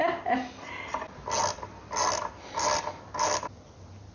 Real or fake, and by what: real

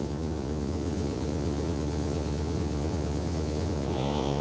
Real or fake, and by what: fake, vocoder, Vocos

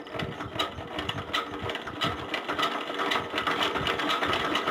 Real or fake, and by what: real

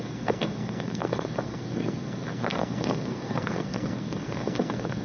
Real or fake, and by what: fake, codec, SNAC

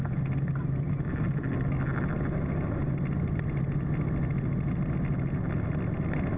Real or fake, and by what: real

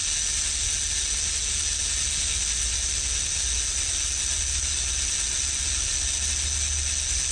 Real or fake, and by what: real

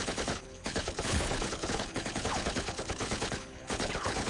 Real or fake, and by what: fake, codec, HILCodec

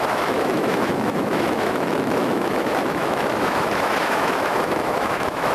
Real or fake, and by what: fake, autoencoder, DAC-VAE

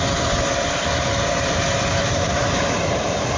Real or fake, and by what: fake, vocoder, BigVGAN v2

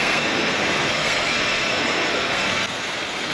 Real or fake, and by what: fake, codec, SNAC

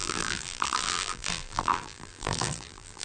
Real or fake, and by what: fake, vocoder, BigVGAN v2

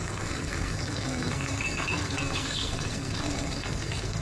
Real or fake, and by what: fake, codec, SNAC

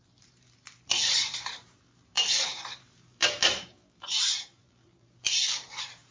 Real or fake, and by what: fake, vocoder, BigVGAN v2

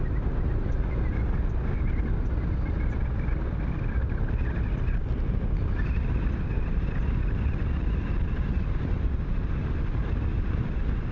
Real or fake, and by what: real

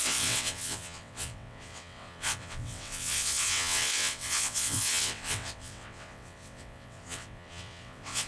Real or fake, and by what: fake, vocoder, WaveNeXt